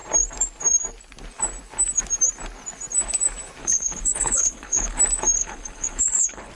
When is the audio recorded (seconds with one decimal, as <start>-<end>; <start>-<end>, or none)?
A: 0.0-3.6; 5.0-5.4